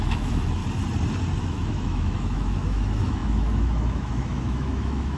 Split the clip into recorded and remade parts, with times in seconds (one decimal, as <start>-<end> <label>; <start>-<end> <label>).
0.0-0.6 remade; 0.6-1.4 recorded; 1.4-5.2 remade